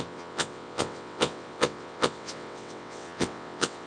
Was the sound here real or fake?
fake